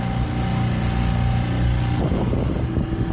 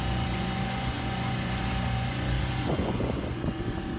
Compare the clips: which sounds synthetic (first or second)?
second